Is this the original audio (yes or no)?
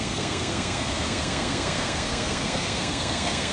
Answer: no